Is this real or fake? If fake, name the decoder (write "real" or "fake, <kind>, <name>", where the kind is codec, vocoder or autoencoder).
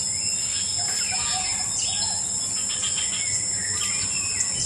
real